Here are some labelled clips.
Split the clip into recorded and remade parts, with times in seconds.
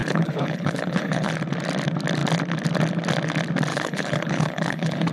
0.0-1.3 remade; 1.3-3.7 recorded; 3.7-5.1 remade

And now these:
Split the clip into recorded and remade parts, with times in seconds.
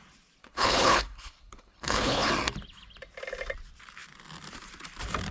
0.0-0.4 recorded; 0.4-2.3 remade; 2.3-5.3 recorded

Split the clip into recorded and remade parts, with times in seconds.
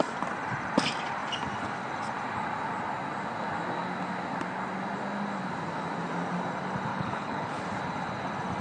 0.0-6.9 recorded; 6.9-7.6 remade; 7.6-8.6 recorded